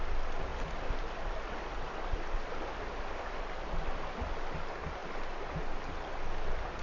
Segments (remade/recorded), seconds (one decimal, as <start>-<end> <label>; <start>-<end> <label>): 0.0-0.5 recorded; 0.5-4.6 remade; 4.6-6.8 recorded